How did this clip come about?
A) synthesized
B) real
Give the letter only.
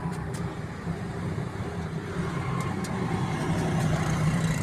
A